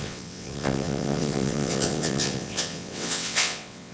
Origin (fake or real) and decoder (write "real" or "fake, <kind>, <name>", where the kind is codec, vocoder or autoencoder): fake, vocoder, WaveNeXt